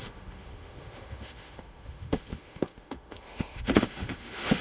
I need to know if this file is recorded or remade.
remade